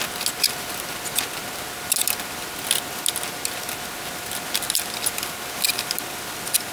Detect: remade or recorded recorded